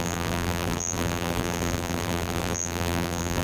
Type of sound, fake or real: fake